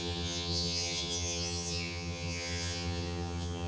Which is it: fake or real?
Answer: fake